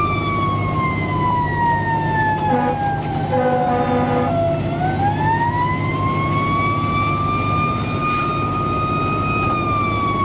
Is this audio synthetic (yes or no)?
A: no